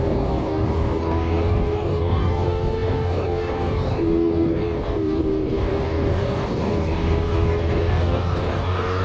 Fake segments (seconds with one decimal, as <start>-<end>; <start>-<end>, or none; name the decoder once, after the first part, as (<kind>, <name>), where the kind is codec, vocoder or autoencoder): 0.0-9.0 (codec, DAC)